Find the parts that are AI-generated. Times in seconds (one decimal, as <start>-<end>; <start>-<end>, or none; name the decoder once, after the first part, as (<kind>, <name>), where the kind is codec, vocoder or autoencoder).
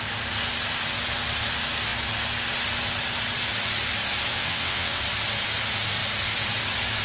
4.3-5.0 (vocoder, WaveNeXt)